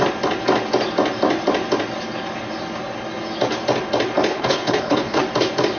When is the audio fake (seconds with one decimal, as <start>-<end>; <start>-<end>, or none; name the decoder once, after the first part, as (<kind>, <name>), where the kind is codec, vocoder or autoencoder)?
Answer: 4.3-5.2 (codec, HILCodec)